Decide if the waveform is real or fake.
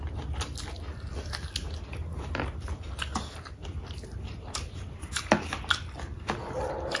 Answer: real